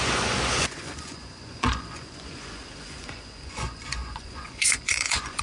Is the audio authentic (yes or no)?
no